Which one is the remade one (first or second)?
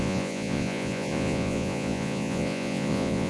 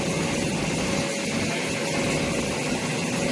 first